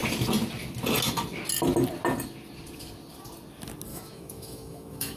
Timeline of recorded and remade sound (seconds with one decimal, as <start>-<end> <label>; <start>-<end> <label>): 0.0-3.9 recorded; 3.9-5.2 remade